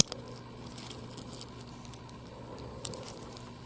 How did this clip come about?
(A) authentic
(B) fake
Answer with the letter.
A